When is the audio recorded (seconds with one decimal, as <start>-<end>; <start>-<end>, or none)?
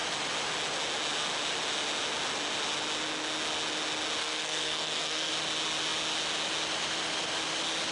0.0-4.2; 5.3-7.9